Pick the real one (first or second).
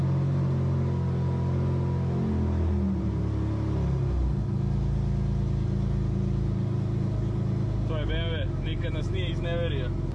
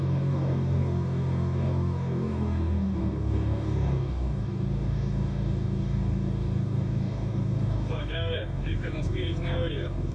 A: first